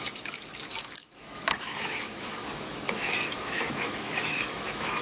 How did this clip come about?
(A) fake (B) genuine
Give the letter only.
A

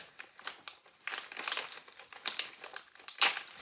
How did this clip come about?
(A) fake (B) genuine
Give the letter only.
B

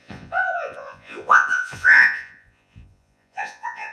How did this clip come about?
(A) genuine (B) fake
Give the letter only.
B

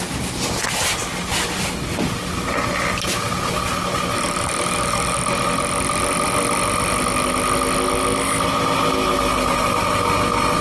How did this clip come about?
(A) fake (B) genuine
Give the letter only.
B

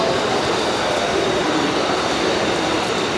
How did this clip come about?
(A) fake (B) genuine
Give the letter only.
A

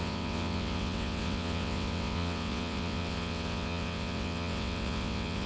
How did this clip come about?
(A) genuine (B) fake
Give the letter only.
B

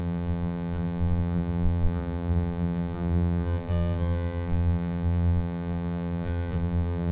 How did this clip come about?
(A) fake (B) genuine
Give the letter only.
A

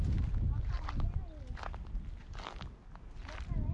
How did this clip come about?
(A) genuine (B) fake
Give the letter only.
A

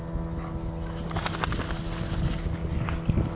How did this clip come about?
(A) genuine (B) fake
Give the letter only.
A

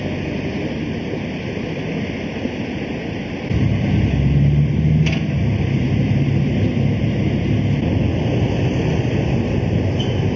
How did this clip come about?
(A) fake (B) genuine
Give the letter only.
B